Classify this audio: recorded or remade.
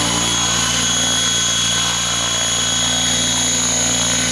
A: recorded